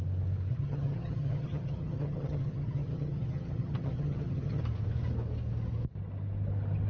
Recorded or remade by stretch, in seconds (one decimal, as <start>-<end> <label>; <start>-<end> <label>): 0.0-0.5 recorded; 0.5-4.6 remade; 4.6-6.9 recorded